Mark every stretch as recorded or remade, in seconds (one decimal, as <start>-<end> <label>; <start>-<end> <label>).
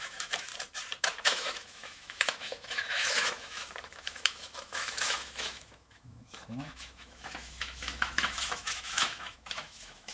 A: 0.0-0.5 remade; 0.5-1.0 recorded; 1.0-10.1 remade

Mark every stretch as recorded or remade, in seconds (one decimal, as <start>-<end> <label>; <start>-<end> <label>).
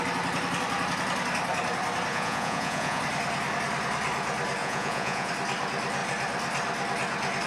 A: 0.0-2.1 recorded; 2.1-3.0 remade; 3.0-4.6 recorded; 4.6-5.3 remade; 5.3-7.5 recorded